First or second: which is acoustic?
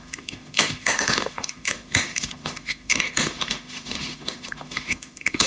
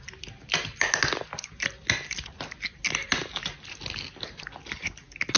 second